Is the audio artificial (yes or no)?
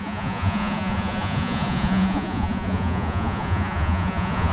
yes